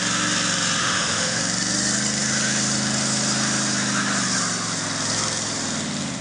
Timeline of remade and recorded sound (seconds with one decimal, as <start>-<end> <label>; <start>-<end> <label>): 0.0-0.8 recorded; 0.8-1.4 remade; 1.4-6.2 recorded